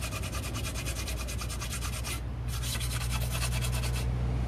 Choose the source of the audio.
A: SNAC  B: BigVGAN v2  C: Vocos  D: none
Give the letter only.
D